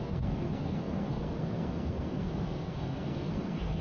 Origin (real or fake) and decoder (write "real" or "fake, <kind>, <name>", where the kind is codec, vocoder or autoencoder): fake, codec, SNAC